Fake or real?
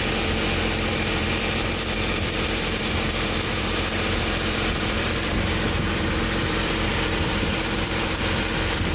fake